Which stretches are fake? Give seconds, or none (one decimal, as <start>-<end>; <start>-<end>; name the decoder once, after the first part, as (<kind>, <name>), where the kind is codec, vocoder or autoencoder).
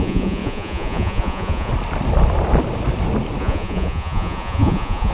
0.0-1.7 (vocoder, Vocos); 3.4-5.1